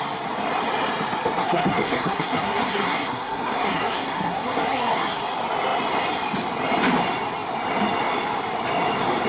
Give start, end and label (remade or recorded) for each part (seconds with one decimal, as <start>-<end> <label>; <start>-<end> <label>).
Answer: 0.0-1.4 recorded; 1.4-5.2 remade; 5.2-9.3 recorded